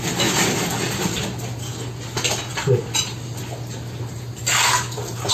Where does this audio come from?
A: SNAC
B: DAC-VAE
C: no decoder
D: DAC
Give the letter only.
C